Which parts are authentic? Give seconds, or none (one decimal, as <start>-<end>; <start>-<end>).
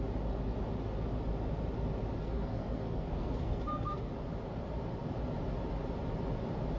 0.0-2.2; 4.1-6.8